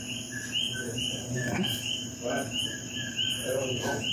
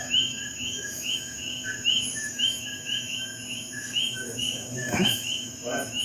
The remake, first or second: second